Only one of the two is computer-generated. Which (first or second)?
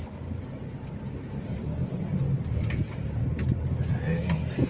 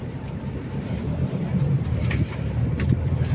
second